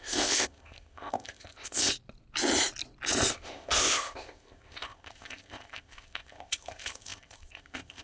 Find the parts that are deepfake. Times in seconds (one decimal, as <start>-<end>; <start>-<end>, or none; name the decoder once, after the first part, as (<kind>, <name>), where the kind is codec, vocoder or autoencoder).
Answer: 0.0-1.9 (codec, ZipCodec); 3.3-8.0